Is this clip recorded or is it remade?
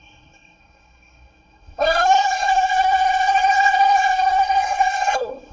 remade